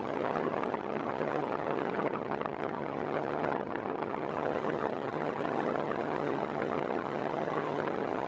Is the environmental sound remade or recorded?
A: remade